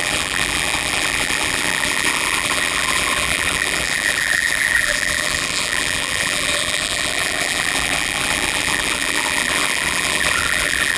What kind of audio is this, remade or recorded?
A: remade